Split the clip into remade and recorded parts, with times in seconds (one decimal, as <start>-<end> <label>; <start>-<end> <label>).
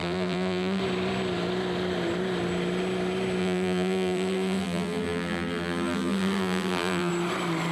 0.0-0.8 remade; 0.8-3.4 recorded; 3.4-7.1 remade; 7.1-7.7 recorded